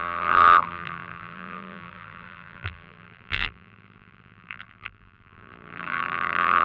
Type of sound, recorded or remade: remade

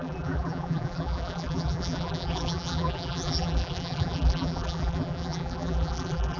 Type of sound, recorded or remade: remade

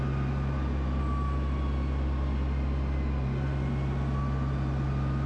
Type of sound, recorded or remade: recorded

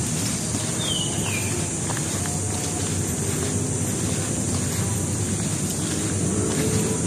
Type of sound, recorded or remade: recorded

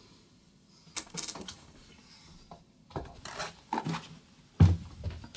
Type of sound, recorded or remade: recorded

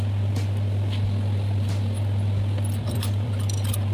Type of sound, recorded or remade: remade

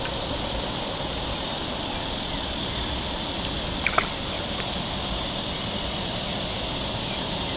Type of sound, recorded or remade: remade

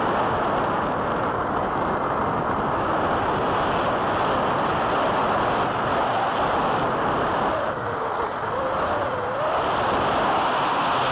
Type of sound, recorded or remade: recorded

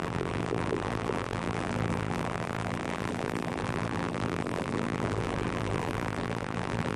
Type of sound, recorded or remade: remade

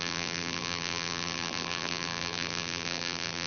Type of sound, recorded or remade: remade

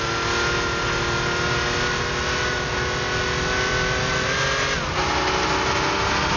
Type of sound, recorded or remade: recorded